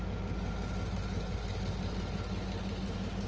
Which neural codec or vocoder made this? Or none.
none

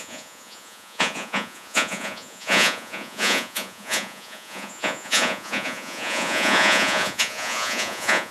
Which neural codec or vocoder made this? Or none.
vocoder, Vocos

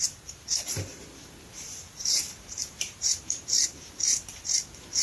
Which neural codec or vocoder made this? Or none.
vocoder, BigVGAN v2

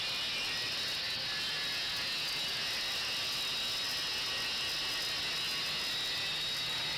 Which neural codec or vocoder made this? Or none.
none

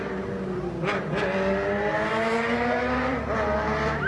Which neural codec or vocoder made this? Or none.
none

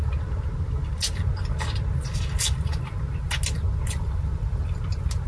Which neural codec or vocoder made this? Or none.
none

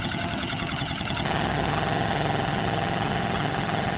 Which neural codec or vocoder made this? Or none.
vocoder, HiFi-GAN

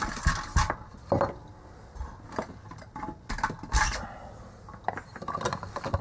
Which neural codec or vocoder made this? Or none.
none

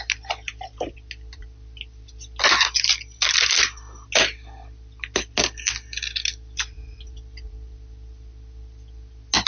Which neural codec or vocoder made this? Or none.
none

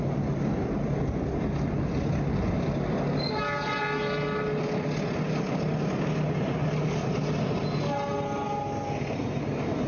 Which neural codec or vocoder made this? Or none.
none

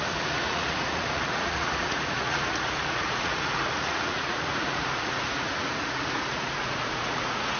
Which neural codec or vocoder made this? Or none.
vocoder, Vocos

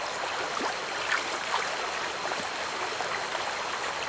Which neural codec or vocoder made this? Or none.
none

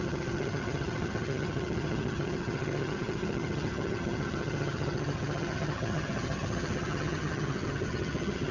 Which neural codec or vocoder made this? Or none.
vocoder, HiFi-GAN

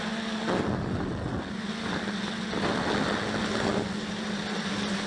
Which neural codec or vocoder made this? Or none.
none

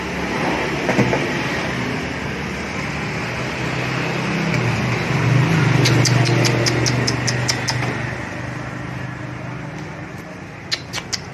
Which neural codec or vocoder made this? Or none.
none